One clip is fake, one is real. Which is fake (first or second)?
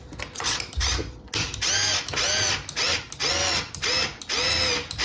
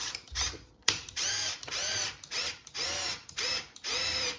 second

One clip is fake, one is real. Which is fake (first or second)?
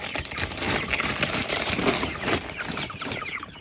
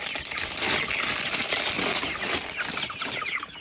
first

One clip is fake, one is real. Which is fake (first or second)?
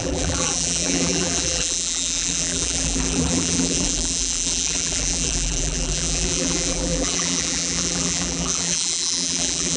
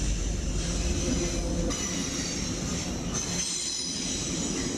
first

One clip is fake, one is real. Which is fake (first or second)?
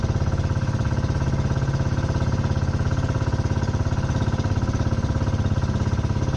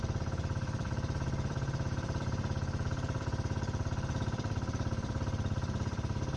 second